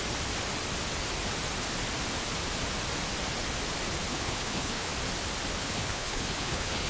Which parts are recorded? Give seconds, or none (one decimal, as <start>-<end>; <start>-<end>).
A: 0.0-4.1; 4.9-5.6